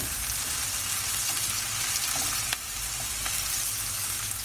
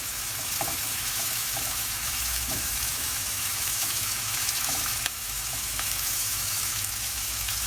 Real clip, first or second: first